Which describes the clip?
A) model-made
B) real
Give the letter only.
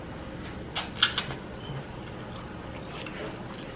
B